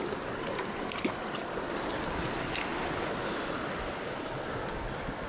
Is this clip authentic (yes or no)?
yes